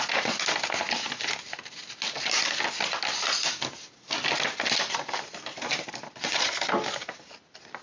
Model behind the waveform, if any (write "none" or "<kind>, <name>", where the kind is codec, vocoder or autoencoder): none